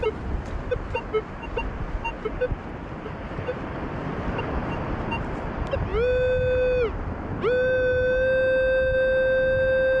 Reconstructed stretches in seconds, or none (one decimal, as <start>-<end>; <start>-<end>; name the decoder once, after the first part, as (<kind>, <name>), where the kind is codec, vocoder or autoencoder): none